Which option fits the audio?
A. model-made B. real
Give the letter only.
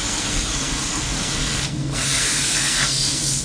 A